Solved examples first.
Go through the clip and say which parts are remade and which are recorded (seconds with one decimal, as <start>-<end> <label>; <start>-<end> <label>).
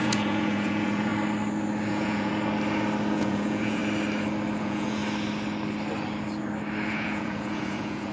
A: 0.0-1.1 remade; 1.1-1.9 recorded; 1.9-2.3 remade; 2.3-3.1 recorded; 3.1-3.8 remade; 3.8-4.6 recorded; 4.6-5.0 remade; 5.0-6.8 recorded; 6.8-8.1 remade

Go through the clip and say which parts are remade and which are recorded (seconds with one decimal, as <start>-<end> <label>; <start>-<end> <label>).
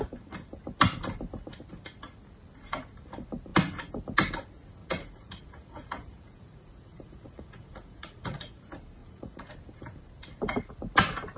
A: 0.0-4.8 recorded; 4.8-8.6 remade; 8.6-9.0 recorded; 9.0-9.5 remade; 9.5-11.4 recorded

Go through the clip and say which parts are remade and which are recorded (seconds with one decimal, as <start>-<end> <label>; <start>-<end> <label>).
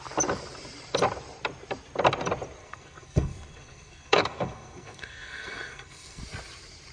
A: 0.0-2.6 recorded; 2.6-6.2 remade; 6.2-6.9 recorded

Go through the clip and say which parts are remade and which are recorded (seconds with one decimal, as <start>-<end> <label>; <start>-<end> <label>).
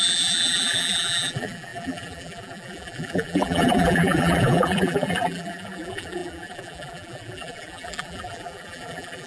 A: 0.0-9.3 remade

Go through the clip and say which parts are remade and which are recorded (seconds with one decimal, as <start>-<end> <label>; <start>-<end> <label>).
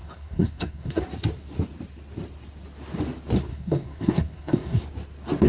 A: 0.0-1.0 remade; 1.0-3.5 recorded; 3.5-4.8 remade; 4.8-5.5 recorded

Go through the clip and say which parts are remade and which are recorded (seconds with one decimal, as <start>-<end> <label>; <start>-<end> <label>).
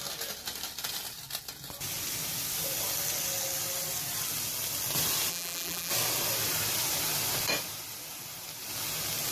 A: 0.0-5.3 recorded; 5.3-5.9 remade; 5.9-9.3 recorded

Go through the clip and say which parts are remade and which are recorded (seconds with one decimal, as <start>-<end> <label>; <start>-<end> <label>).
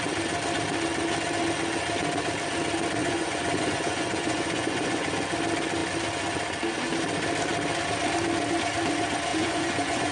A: 0.0-3.0 recorded; 3.0-5.1 remade; 5.1-9.3 recorded; 9.3-10.1 remade